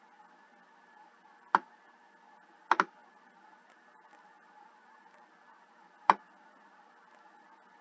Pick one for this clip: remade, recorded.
recorded